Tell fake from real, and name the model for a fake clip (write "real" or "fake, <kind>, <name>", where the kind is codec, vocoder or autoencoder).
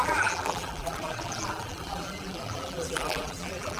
fake, vocoder, BigVGAN v2